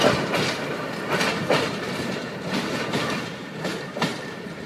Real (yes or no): no